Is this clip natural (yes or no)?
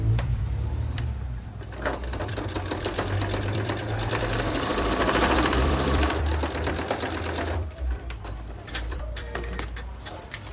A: no